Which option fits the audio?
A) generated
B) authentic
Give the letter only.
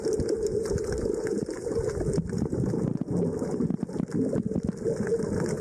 B